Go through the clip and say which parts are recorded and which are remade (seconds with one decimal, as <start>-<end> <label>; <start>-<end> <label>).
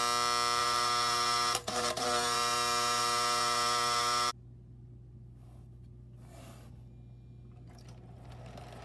0.0-0.6 recorded; 0.6-4.3 remade; 4.3-8.8 recorded